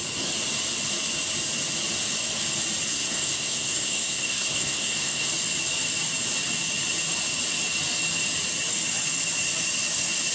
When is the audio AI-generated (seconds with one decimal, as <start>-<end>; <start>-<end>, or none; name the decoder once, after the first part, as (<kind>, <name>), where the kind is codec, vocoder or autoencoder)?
2.9-5.3 (codec, SNAC)